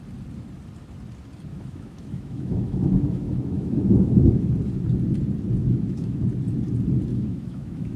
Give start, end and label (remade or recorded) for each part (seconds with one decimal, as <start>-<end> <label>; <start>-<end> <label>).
0.0-1.5 recorded; 1.5-4.5 remade; 4.5-5.6 recorded; 5.6-6.2 remade; 6.2-7.1 recorded; 7.1-8.0 remade